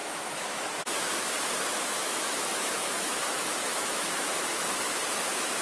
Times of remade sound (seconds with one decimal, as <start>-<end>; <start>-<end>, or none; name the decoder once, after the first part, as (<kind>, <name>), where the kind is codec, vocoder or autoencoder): 0.0-5.6 (autoencoder, DAC-VAE)